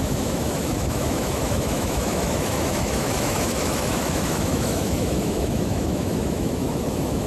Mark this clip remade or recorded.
remade